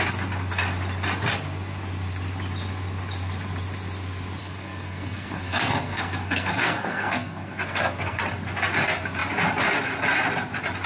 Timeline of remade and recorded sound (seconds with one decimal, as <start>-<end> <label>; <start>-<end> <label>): 0.0-4.4 recorded; 4.4-8.2 remade; 8.2-10.9 recorded